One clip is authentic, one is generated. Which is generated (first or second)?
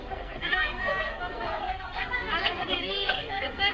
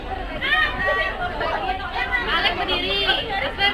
first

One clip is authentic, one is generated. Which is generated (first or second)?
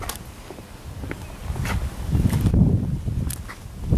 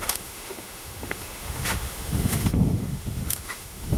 second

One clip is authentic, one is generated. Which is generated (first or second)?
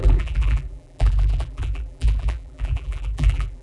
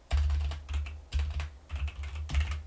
first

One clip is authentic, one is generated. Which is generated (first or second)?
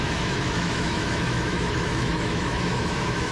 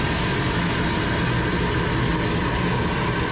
first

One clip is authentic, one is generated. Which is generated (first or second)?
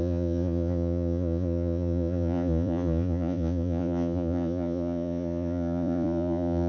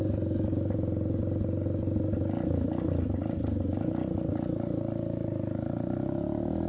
first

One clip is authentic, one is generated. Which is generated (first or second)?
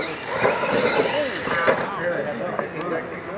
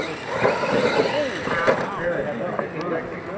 second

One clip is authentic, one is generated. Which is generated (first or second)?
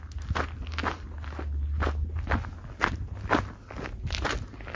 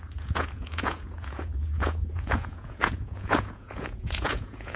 second